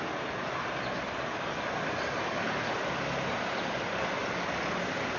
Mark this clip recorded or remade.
recorded